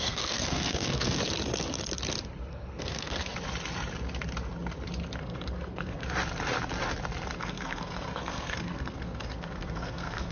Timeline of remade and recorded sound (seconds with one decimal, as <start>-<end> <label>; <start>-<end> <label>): 0.0-1.2 remade; 1.2-2.5 recorded; 2.5-3.2 remade; 3.2-5.2 recorded; 5.2-6.0 remade; 6.0-7.4 recorded; 7.4-10.3 remade